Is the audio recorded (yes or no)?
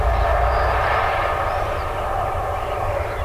no